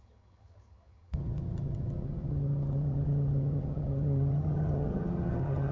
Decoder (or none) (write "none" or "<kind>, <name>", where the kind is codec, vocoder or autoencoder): vocoder, HiFi-GAN